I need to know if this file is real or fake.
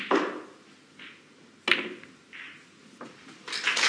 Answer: real